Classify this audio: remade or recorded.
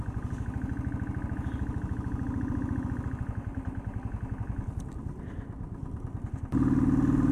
recorded